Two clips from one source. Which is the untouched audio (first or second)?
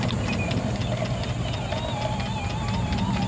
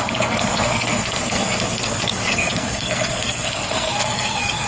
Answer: first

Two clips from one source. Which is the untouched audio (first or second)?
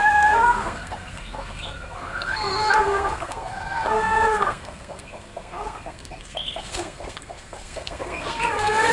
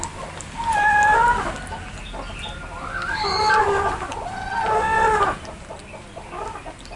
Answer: second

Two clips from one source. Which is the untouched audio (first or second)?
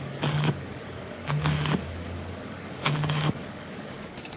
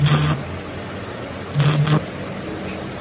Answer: second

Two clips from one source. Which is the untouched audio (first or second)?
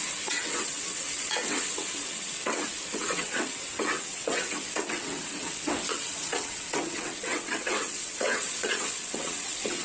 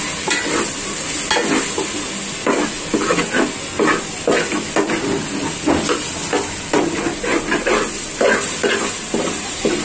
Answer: second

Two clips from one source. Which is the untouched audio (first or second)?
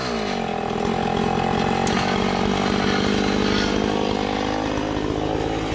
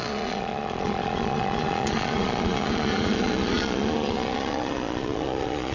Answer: first